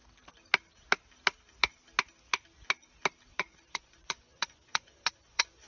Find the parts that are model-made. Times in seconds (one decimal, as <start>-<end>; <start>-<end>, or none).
3.4-5.7